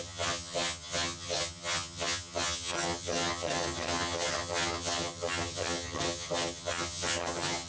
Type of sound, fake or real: fake